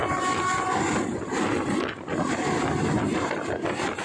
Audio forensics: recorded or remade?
recorded